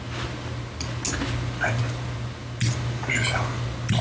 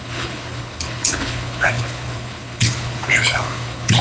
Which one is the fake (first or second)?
second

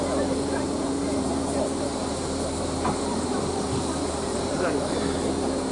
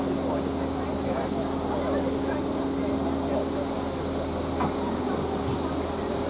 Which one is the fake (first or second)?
first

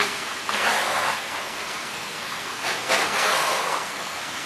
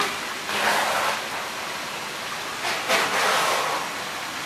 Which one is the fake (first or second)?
first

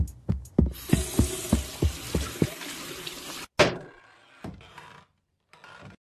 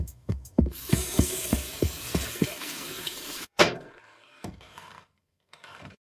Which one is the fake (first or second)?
second